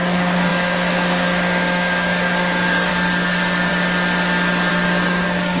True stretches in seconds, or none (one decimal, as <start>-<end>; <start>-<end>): 3.7-4.7